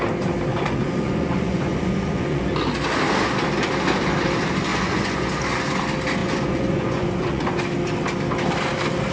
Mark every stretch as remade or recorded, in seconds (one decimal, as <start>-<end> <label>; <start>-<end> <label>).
0.0-0.5 recorded; 0.5-2.4 remade; 2.4-4.7 recorded; 4.7-5.3 remade; 5.3-6.2 recorded; 6.2-7.6 remade; 7.6-9.1 recorded

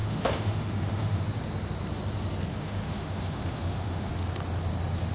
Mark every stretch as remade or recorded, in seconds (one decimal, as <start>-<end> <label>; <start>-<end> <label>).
0.0-1.2 remade; 1.2-2.5 recorded; 2.5-4.1 remade; 4.1-5.1 recorded

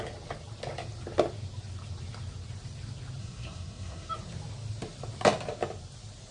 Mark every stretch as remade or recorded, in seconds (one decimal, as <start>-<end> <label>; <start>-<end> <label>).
0.0-3.2 recorded; 3.2-4.1 remade; 4.1-6.3 recorded

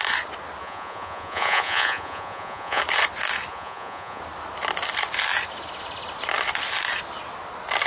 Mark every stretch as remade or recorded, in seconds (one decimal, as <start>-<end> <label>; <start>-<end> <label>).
0.0-0.6 recorded; 0.6-2.8 remade; 2.8-3.5 recorded; 3.5-4.2 remade; 4.2-7.9 recorded

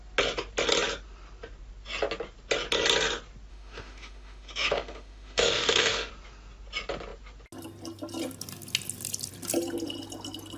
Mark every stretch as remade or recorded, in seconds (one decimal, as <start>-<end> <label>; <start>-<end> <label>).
0.0-3.5 recorded; 3.5-6.1 remade; 6.1-10.6 recorded

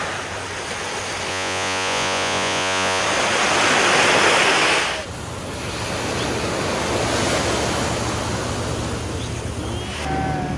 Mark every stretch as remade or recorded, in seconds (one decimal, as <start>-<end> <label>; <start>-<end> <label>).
0.0-1.3 recorded; 1.3-3.0 remade; 3.0-10.6 recorded

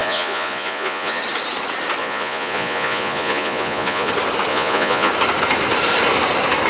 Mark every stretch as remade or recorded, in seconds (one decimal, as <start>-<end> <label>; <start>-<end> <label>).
0.0-1.2 remade; 1.2-2.0 recorded; 2.0-4.1 remade; 4.1-4.5 recorded; 4.5-5.1 remade; 5.1-6.7 recorded